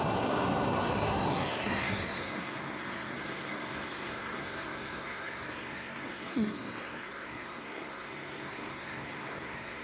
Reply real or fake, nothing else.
fake